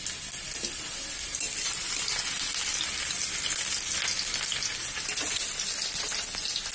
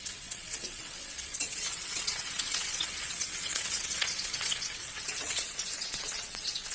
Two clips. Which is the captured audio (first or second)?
first